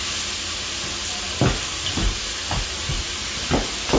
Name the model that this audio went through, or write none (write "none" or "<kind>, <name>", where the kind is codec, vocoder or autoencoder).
none